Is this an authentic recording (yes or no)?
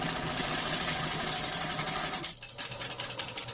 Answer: yes